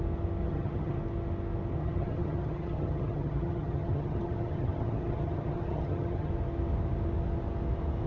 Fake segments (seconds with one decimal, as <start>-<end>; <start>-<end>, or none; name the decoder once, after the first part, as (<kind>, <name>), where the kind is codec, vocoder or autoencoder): 0.4-1.0 (vocoder, HiFi-GAN); 1.8-6.3